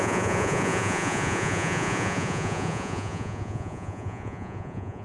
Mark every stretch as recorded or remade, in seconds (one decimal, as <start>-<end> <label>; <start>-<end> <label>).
0.0-5.0 remade